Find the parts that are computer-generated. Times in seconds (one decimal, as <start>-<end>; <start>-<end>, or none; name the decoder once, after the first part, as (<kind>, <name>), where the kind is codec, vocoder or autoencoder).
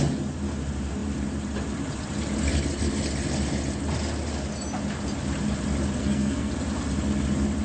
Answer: 6.0-6.5 (codec, SNAC)